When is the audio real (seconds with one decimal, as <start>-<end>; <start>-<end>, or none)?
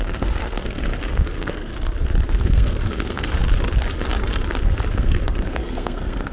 1.7-2.3; 3.4-4.9